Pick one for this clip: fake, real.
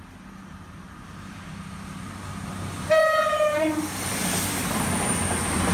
real